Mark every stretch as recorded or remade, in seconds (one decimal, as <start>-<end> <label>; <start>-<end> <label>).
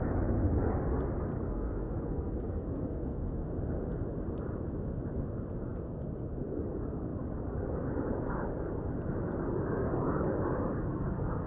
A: 0.0-1.3 recorded; 1.3-3.5 remade; 3.5-11.5 recorded